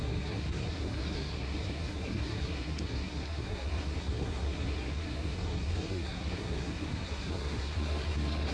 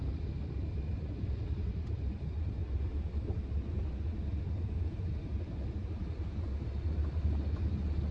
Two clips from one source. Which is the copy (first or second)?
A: first